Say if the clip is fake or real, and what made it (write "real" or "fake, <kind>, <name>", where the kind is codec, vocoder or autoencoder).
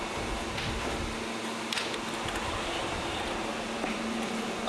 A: real